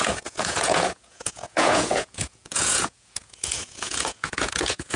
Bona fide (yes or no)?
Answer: no